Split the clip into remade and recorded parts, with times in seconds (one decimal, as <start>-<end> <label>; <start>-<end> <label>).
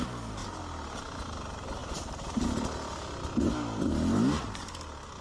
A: 0.0-5.2 recorded